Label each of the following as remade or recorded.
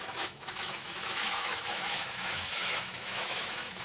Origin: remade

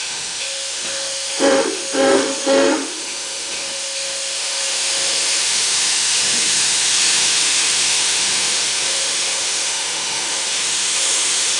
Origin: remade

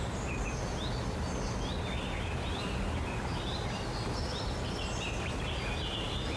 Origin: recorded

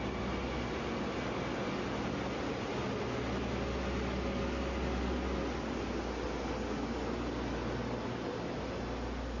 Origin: recorded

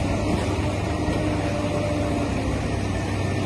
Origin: recorded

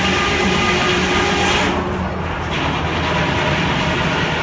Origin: recorded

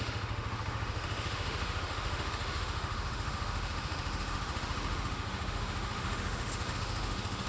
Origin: remade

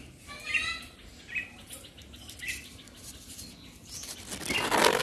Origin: recorded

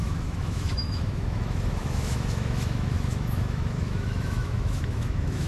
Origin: remade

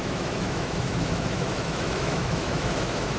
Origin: remade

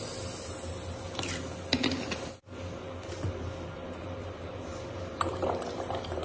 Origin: recorded